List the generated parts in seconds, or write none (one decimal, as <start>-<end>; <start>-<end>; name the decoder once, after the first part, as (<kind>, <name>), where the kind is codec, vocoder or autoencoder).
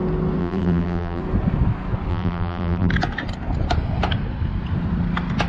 0.4-1.2 (vocoder, BigVGAN v2); 2.1-2.9